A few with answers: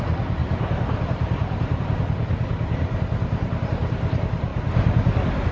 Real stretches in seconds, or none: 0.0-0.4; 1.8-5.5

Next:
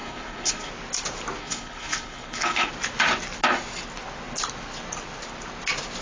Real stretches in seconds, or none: 0.7-1.4; 2.7-6.0